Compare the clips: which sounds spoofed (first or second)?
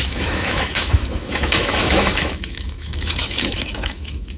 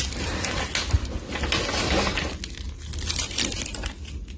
first